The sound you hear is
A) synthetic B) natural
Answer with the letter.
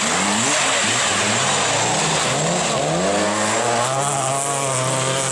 B